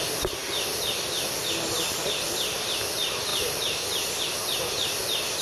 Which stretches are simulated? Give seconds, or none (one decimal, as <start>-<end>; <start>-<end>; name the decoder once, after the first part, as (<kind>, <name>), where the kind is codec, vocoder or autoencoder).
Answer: 3.3-4.2 (vocoder, BigVGAN v2)